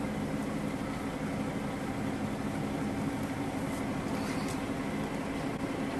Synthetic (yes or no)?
no